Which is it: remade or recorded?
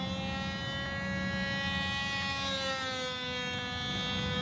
recorded